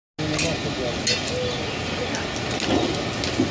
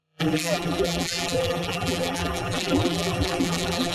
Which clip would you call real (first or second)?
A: first